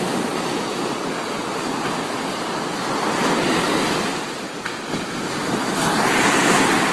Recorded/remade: recorded